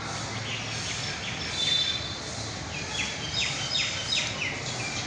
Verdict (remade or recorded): recorded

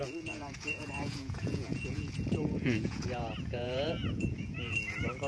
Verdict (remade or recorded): remade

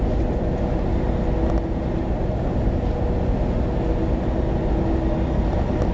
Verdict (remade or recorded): recorded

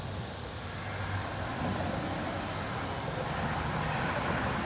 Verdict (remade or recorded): recorded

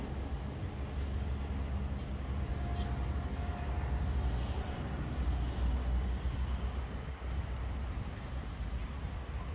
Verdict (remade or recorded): recorded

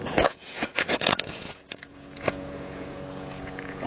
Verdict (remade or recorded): remade